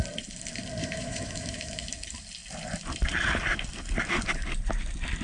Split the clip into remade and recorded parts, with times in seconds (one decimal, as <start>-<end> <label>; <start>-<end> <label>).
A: 0.0-0.8 recorded; 0.8-1.9 remade; 1.9-5.2 recorded